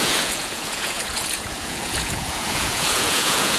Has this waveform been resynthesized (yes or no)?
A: yes